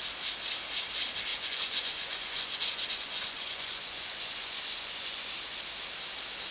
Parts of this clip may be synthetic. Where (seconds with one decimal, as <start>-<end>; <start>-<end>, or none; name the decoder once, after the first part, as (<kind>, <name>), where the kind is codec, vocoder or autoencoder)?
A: 1.3-5.2 (vocoder, Vocos)